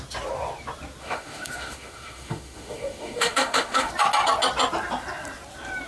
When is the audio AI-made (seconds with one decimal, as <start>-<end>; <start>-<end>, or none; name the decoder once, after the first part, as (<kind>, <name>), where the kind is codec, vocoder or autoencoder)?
1.0-3.9 (autoencoder, DAC-VAE)